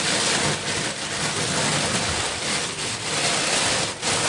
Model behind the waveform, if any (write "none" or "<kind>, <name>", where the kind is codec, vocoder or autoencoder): none